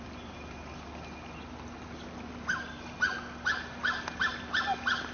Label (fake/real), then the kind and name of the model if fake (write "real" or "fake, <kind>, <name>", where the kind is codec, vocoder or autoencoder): real